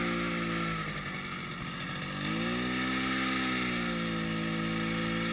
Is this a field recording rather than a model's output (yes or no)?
yes